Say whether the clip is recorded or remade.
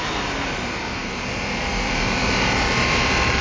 remade